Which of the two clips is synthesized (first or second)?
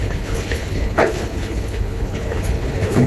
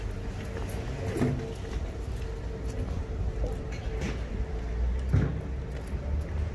first